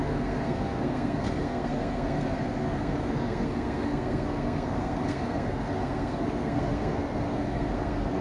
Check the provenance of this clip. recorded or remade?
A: remade